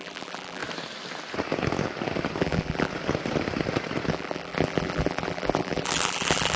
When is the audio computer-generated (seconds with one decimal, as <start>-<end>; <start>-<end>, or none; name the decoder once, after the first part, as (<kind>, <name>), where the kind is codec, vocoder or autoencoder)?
0.0-0.6 (vocoder, BigVGAN v2); 2.4-2.9; 4.1-6.6